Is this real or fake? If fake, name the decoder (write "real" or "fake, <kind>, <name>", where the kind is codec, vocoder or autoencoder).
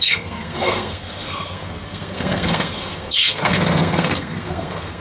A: fake, codec, SNAC